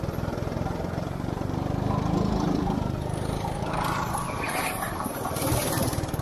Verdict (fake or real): fake